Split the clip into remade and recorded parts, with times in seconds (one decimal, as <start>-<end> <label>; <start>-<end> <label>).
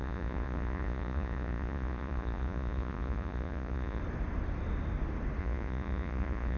0.0-4.0 remade; 4.0-5.4 recorded; 5.4-6.6 remade